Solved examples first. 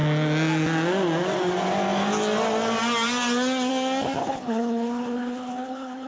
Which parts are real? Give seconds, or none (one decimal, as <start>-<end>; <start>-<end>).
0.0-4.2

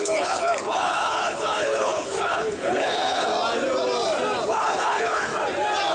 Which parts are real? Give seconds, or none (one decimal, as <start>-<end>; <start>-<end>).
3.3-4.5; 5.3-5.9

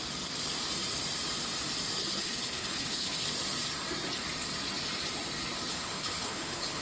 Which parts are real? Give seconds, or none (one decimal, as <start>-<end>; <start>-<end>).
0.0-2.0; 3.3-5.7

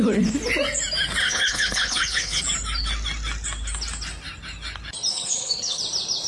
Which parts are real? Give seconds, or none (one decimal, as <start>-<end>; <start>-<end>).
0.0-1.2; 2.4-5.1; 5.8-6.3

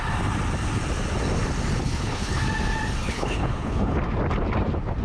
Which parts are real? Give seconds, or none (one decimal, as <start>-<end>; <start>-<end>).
0.0-1.8; 2.4-3.0; 3.9-5.0